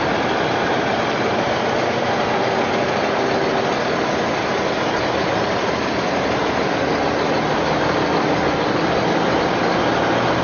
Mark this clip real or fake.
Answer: real